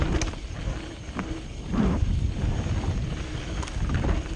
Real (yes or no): yes